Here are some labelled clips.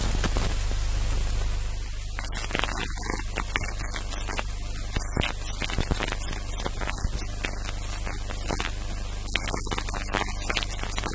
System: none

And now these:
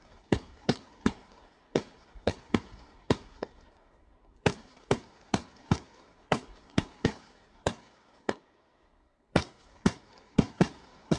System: codec, SNAC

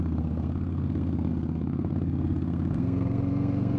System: codec, SNAC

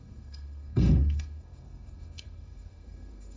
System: codec, SNAC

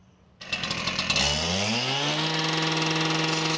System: none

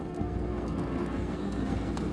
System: codec, SNAC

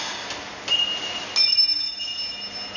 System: none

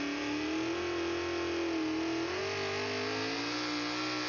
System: none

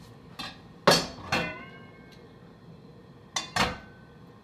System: none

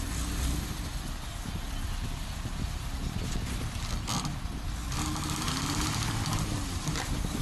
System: none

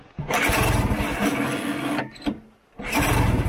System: none